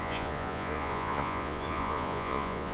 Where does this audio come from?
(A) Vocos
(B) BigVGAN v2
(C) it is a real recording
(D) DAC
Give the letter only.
A